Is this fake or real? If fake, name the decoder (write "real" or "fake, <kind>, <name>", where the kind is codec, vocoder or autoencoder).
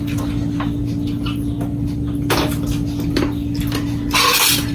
real